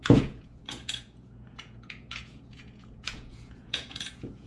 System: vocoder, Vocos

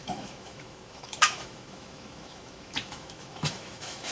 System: autoencoder, DAC-VAE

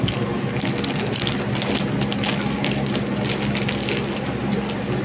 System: none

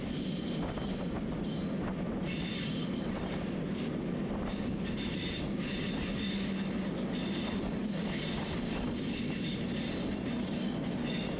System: none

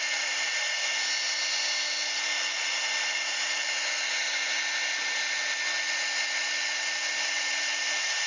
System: none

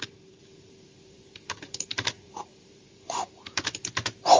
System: vocoder, BigVGAN v2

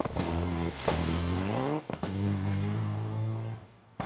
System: codec, DAC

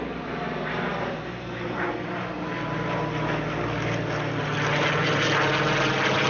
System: none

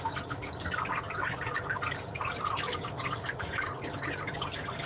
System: none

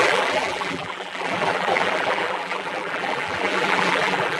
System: vocoder, BigVGAN v2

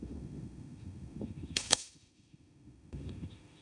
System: autoencoder, DAC-VAE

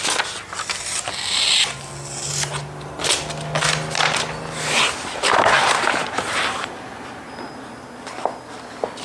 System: none